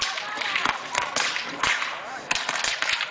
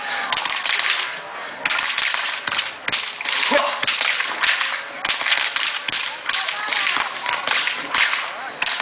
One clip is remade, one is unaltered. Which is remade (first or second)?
first